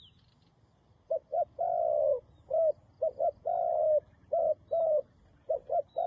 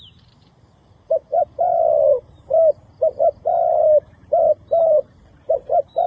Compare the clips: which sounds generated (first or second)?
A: second